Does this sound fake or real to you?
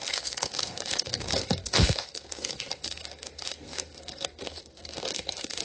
fake